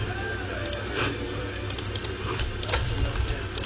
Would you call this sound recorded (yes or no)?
yes